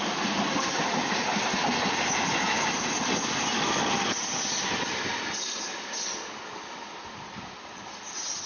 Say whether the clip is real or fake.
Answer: real